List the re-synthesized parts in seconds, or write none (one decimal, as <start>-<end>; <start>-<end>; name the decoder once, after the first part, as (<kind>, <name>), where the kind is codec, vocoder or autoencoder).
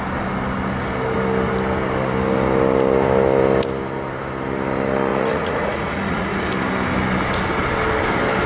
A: 5.1-6.5 (vocoder, Vocos)